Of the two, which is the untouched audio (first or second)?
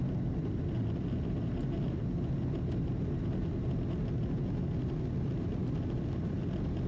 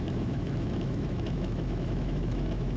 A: first